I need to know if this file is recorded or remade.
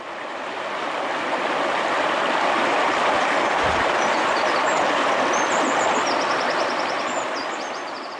remade